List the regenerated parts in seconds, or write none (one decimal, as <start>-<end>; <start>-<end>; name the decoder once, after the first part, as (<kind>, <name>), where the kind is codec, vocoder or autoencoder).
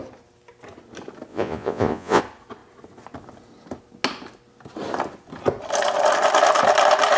1.3-2.2 (vocoder, Vocos)